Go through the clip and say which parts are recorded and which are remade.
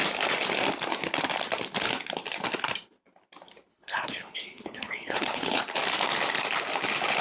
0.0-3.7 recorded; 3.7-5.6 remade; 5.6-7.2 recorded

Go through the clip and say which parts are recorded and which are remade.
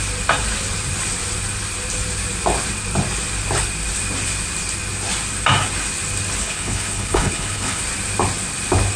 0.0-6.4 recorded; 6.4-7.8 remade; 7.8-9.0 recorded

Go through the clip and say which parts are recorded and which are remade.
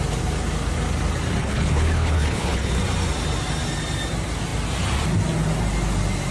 0.0-1.4 recorded; 1.4-2.7 remade; 2.7-6.3 recorded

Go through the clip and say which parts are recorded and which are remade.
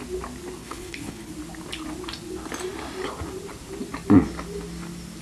0.0-0.6 recorded; 0.6-1.3 remade; 1.3-5.2 recorded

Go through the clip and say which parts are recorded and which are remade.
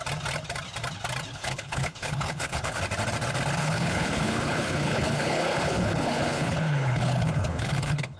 0.0-1.3 recorded; 1.3-2.8 remade; 2.8-3.6 recorded; 3.6-8.2 remade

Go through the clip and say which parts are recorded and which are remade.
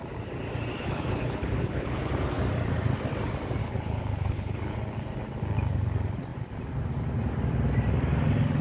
0.0-0.8 recorded; 0.8-2.1 remade; 2.1-3.6 recorded; 3.6-4.8 remade; 4.8-8.6 recorded